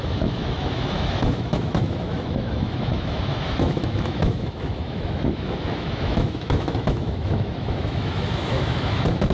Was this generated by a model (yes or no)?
yes